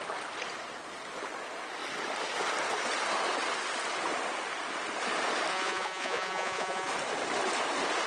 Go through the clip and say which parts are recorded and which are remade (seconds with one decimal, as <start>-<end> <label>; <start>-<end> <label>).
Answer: 0.0-5.5 recorded; 5.5-6.9 remade; 6.9-8.1 recorded